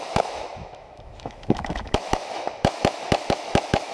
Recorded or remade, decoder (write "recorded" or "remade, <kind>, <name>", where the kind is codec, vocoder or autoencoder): remade, autoencoder, DAC-VAE